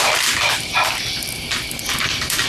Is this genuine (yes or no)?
yes